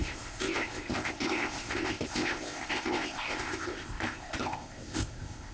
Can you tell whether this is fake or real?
fake